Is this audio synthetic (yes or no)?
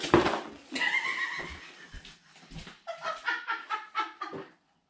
no